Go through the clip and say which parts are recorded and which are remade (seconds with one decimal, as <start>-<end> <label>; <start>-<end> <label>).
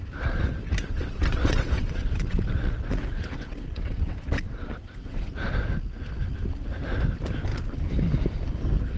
0.0-0.9 recorded; 0.9-5.3 remade; 5.3-9.0 recorded